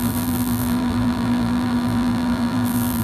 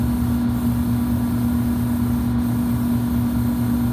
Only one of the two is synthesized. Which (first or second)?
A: first